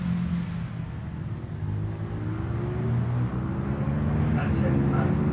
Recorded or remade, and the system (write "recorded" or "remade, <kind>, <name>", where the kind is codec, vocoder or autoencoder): recorded